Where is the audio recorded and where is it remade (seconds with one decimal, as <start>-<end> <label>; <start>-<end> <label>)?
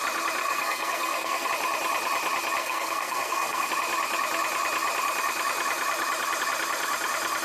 0.0-0.4 recorded; 0.4-1.5 remade; 1.5-2.6 recorded; 2.6-3.7 remade; 3.7-7.4 recorded